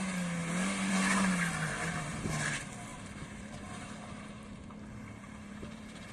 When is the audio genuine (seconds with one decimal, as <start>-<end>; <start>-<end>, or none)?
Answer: 0.0-1.7; 2.3-2.9